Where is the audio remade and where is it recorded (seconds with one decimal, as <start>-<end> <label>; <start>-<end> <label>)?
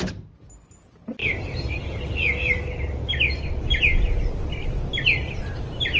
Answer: 0.0-1.2 recorded; 1.2-4.8 remade; 4.8-6.0 recorded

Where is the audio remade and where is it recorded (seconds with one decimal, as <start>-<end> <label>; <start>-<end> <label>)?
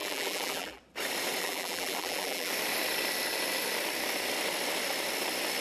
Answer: 0.0-0.8 remade; 0.8-1.4 recorded; 1.4-2.5 remade; 2.5-5.6 recorded